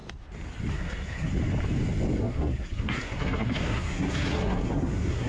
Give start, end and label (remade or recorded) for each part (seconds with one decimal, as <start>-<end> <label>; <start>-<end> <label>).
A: 0.0-0.7 recorded; 0.7-1.3 remade; 1.3-2.2 recorded; 2.2-5.3 remade